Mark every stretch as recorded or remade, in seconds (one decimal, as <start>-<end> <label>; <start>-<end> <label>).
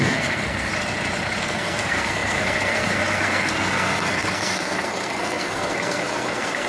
0.0-0.7 remade; 0.7-1.4 recorded; 1.4-6.7 remade